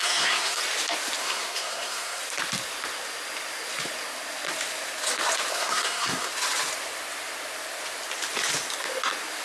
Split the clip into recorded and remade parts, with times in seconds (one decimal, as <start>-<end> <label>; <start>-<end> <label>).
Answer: 0.0-0.6 remade; 0.6-1.2 recorded; 1.2-2.2 remade; 2.2-5.5 recorded; 5.5-6.3 remade; 6.3-9.4 recorded